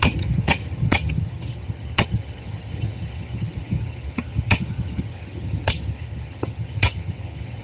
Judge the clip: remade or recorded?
remade